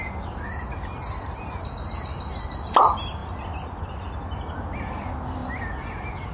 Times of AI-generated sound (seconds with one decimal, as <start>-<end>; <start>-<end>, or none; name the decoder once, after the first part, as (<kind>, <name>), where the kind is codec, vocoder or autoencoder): none